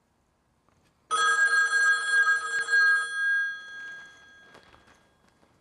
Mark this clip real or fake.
real